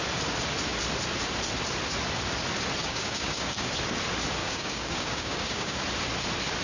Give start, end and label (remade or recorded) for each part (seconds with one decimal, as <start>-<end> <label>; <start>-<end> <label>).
0.0-2.8 recorded; 2.8-3.7 remade; 3.7-4.4 recorded; 4.4-5.8 remade; 5.8-6.6 recorded